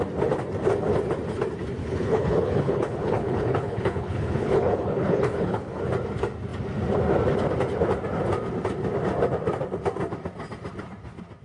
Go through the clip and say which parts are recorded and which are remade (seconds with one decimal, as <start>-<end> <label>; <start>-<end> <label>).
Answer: 0.0-1.8 recorded; 1.8-5.8 remade; 5.8-11.4 recorded